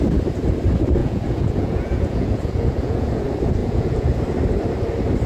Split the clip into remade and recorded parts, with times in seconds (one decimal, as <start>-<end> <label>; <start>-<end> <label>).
0.0-1.0 recorded; 1.0-3.2 remade; 3.2-3.6 recorded; 3.6-4.2 remade; 4.2-5.3 recorded